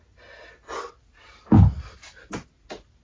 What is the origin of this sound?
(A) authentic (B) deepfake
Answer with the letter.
A